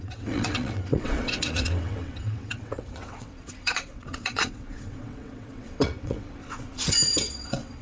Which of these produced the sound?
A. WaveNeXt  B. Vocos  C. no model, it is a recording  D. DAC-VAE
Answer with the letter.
A